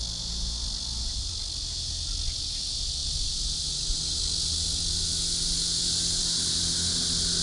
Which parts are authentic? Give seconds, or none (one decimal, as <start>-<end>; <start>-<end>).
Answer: 0.0-7.4